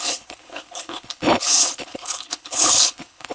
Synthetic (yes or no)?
yes